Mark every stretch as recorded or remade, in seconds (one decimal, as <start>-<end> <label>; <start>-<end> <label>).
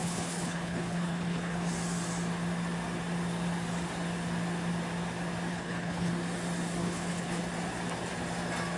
0.0-1.7 remade; 1.7-5.5 recorded; 5.5-6.1 remade; 6.1-6.8 recorded; 6.8-7.4 remade; 7.4-8.8 recorded